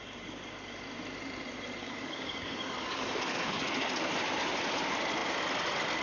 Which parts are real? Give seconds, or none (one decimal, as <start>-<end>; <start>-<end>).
0.0-1.8; 3.7-6.0